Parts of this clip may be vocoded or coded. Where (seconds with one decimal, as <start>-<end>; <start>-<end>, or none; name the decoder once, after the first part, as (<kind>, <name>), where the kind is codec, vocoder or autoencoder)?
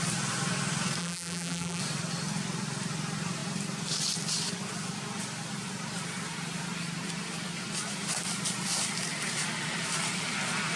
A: 1.0-1.8 (vocoder, BigVGAN v2)